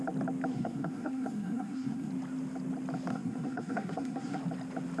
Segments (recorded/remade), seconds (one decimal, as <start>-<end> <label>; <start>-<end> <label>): 0.0-0.5 recorded; 0.5-2.1 remade; 2.1-3.1 recorded; 3.1-4.4 remade; 4.4-5.0 recorded